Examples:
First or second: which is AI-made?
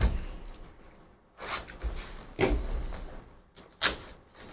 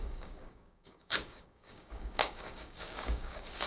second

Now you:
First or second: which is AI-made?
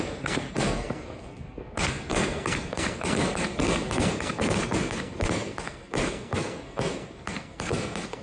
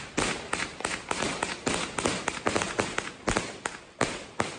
first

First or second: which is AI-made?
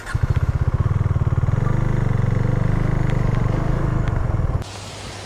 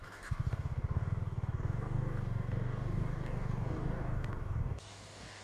second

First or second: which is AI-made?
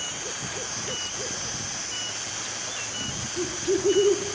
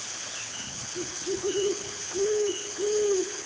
second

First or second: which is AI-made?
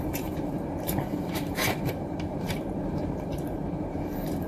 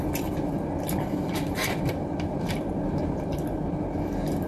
first